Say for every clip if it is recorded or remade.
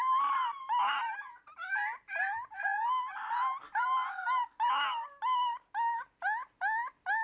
recorded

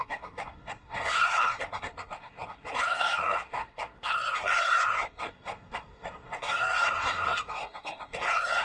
remade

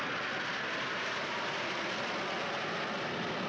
recorded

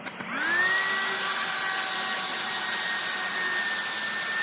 recorded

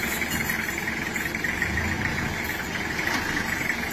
recorded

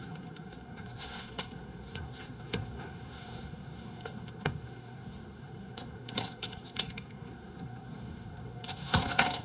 remade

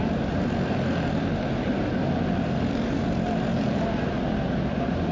recorded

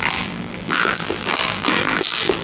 remade